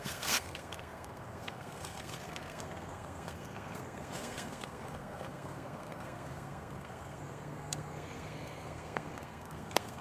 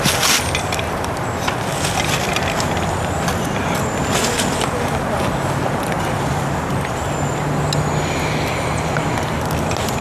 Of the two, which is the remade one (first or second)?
first